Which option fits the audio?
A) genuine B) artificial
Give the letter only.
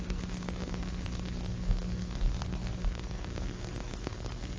B